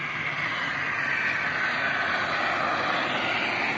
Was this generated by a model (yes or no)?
no